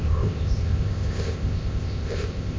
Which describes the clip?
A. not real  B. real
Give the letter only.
A